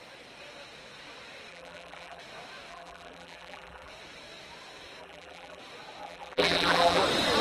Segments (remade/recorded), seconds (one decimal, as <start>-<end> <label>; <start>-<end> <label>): 0.0-1.5 recorded; 1.5-2.2 remade; 2.2-2.7 recorded; 2.7-3.9 remade; 3.9-5.0 recorded; 5.0-5.6 remade; 5.6-6.0 recorded; 6.0-7.0 remade; 7.0-7.4 recorded